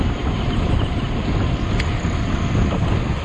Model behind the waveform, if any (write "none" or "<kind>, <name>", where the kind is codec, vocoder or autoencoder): none